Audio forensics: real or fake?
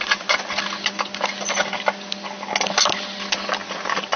real